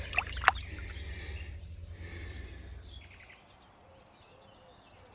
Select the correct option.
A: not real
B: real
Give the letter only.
B